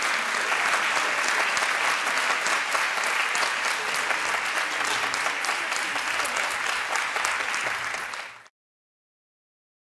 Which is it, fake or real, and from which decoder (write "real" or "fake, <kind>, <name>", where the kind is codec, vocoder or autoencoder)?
real